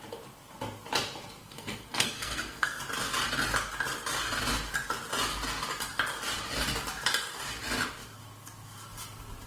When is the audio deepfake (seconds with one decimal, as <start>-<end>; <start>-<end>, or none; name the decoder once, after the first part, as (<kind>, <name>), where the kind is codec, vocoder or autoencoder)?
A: 1.4-2.8 (codec, SNAC)